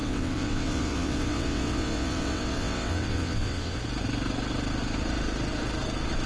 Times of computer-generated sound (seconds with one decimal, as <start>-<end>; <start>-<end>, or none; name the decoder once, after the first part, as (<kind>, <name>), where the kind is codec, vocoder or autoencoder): 0.0-3.8 (vocoder, WaveNeXt)